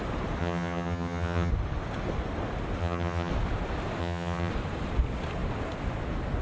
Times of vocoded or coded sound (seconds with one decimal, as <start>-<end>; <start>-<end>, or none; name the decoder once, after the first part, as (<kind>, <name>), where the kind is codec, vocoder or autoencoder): 0.4-1.5 (vocoder, HiFi-GAN); 2.8-3.3; 4.0-4.5